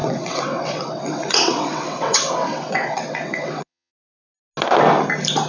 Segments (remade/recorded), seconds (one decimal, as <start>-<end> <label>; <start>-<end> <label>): 0.0-3.9 remade; 3.9-5.5 recorded